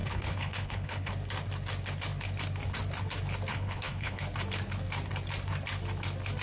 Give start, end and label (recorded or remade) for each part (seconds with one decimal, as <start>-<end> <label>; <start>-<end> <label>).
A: 0.0-1.1 remade; 1.1-3.5 recorded; 3.5-4.2 remade; 4.2-6.4 recorded